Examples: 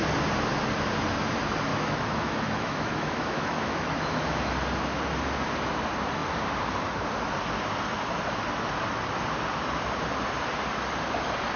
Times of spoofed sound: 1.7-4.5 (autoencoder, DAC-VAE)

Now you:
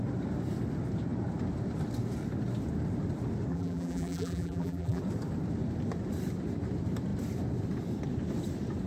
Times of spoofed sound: 3.5-5.0 (vocoder, BigVGAN v2)

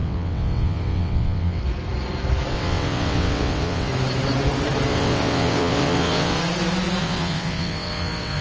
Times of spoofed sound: 0.0-1.6 (vocoder, WaveNeXt); 2.5-3.9; 4.9-6.4; 7.0-8.4

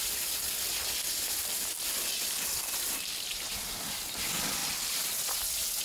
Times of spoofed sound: none